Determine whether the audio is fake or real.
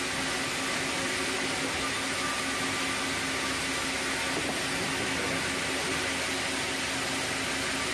real